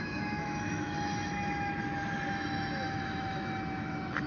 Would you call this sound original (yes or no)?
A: no